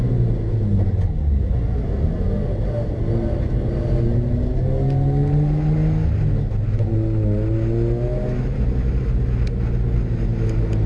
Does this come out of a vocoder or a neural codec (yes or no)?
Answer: no